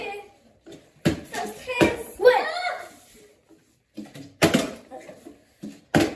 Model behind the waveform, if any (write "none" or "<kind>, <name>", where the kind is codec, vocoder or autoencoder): vocoder, BigVGAN v2